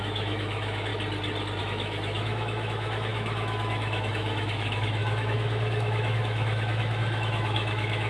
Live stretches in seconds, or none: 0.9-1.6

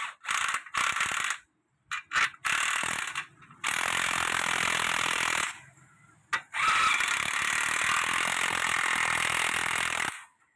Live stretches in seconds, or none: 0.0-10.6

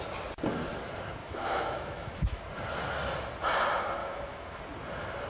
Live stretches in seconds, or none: 0.0-1.2; 2.4-4.0; 4.6-5.3

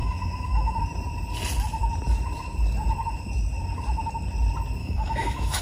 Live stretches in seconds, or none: 0.8-4.8